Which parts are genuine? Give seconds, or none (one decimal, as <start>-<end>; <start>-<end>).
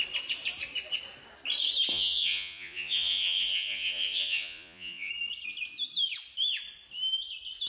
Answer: 0.0-1.9; 5.1-7.7